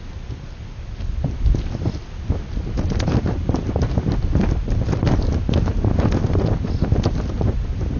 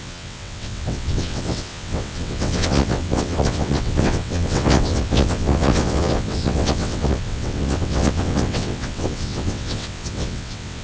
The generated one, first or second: second